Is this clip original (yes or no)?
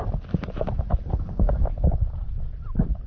no